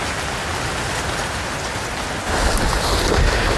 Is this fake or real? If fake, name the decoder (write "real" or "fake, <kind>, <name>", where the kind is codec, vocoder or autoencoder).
real